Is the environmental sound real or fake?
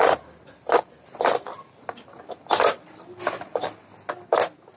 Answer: real